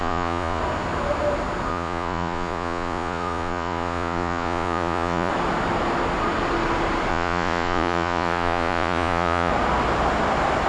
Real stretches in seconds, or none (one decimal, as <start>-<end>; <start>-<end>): 0.6-1.7; 5.3-7.1; 9.5-10.7